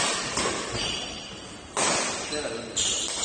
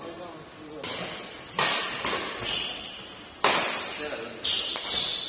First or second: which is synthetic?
first